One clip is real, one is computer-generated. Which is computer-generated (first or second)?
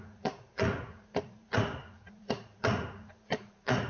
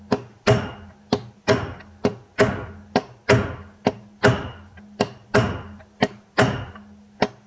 first